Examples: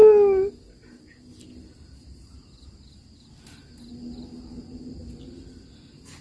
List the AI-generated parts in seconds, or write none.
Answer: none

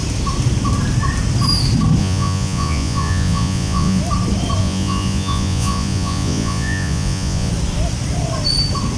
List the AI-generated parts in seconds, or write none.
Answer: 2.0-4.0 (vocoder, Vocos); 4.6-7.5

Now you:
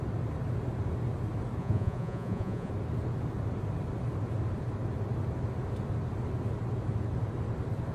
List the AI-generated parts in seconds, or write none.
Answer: 1.6-2.7 (vocoder, Vocos)

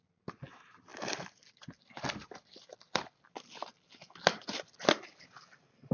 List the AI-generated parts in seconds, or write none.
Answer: none

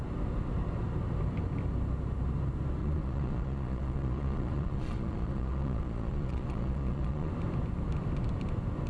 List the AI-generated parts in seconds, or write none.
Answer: 2.8-7.3 (vocoder, Vocos)

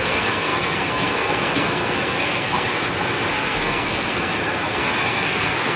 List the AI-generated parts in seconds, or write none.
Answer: 0.0-2.8 (codec, SNAC); 3.3-5.8

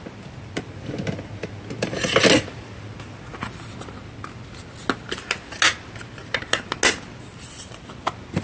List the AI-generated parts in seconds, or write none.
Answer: none

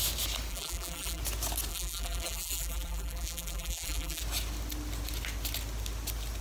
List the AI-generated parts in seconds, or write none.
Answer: 0.5-1.2 (vocoder, BigVGAN v2); 1.7-4.2